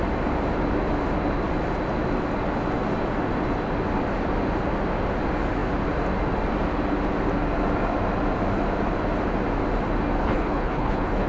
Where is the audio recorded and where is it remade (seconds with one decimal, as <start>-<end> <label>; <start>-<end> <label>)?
0.0-10.2 recorded; 10.2-11.3 remade